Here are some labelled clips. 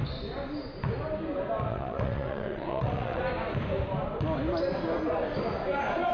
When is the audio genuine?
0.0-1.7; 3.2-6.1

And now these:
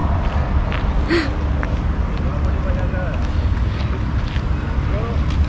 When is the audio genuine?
0.0-5.5

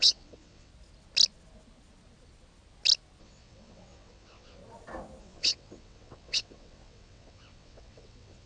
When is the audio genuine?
0.7-3.2; 4.6-5.2

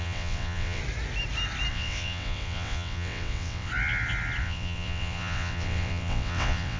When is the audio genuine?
0.8-1.7; 3.7-4.4

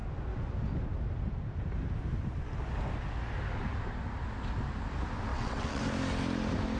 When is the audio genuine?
0.0-5.3; 5.8-6.8

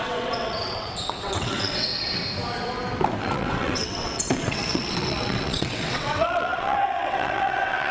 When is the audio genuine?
1.9-3.2

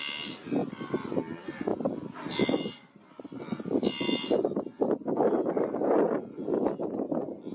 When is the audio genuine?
0.0-7.5